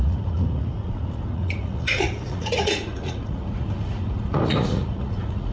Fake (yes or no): yes